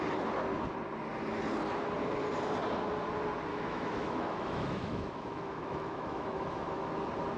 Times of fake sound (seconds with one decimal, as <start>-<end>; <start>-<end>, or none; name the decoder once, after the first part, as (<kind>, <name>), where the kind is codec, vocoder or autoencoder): 3.5-6.9 (autoencoder, DAC-VAE)